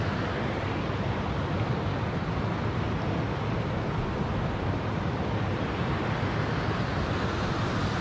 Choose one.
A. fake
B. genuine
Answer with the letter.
B